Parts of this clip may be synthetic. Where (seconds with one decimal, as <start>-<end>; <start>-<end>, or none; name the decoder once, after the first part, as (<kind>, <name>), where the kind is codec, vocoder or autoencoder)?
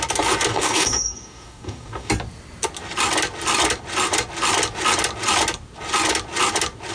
0.5-2.1 (codec, DAC)